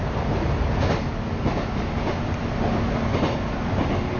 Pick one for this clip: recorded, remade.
recorded